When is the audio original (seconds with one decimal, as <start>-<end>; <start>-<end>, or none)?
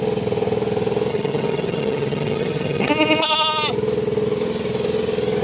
0.0-1.1; 2.9-5.4